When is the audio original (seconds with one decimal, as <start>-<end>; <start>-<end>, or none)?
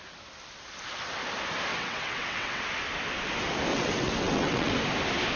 0.0-1.7; 2.6-3.7; 4.7-5.4